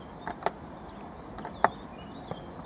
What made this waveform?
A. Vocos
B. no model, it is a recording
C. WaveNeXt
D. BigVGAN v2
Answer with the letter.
B